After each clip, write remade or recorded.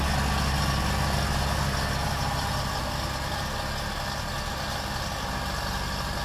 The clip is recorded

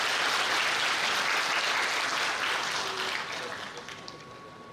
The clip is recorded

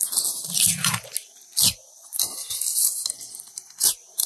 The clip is recorded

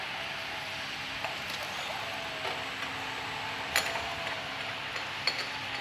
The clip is recorded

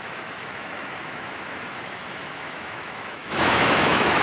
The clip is remade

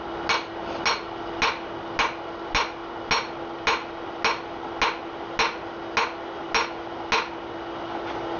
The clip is recorded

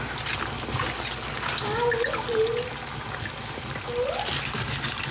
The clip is recorded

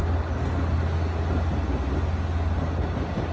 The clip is recorded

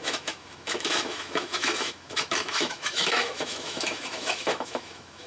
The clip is remade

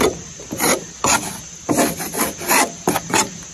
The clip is recorded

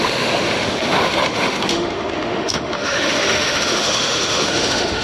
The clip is remade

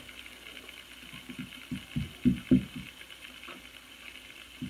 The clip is recorded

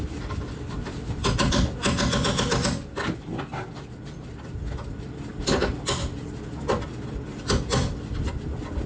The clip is recorded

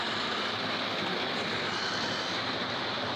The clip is recorded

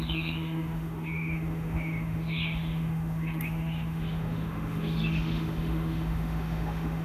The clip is remade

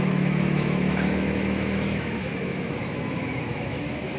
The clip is remade